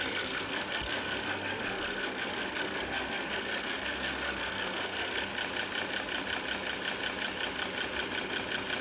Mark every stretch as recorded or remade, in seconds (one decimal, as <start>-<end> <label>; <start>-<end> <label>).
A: 0.0-5.3 remade; 5.3-8.8 recorded

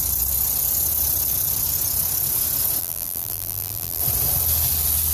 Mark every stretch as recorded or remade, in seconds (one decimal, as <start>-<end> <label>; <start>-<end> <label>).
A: 0.0-2.8 recorded; 2.8-4.0 remade; 4.0-5.1 recorded

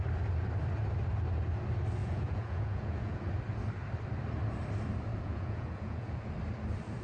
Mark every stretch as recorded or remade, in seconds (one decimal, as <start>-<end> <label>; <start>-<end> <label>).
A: 0.0-2.0 recorded; 2.0-3.3 remade; 3.3-5.1 recorded; 5.1-6.3 remade; 6.3-7.0 recorded

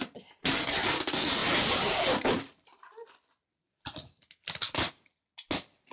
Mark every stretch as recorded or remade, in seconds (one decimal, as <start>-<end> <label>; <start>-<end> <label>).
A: 0.0-1.4 recorded; 1.4-4.9 remade; 4.9-5.9 recorded

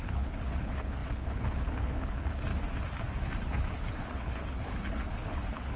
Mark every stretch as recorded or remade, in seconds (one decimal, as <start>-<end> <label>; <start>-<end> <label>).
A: 0.0-2.5 remade; 2.5-3.4 recorded; 3.4-5.8 remade

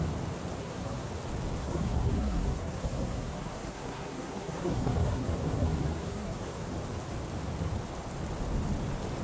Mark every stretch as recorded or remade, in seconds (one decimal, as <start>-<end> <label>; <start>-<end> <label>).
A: 0.0-0.6 recorded; 0.6-1.1 remade; 1.1-1.6 recorded; 1.6-6.7 remade; 6.7-9.2 recorded

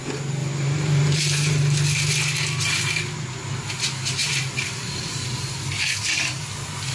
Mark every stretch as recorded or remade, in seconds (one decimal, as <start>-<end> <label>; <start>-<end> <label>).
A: 0.0-0.4 recorded; 0.4-1.6 remade; 1.6-4.2 recorded; 4.2-6.1 remade; 6.1-6.9 recorded

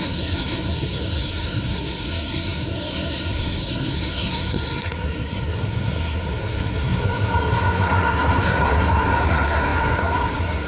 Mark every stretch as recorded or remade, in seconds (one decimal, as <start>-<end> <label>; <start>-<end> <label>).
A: 0.0-10.7 remade